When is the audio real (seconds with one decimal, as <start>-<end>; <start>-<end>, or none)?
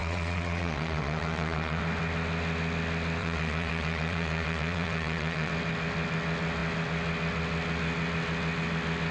1.8-3.2; 5.5-9.1